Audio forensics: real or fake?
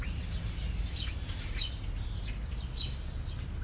real